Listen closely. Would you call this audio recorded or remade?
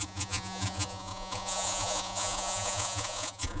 remade